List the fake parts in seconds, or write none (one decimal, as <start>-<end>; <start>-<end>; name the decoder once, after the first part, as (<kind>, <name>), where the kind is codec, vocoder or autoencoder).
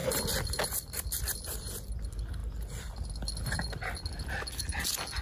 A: 0.0-2.0 (vocoder, BigVGAN v2)